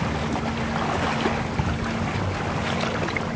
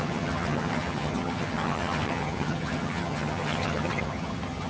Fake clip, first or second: second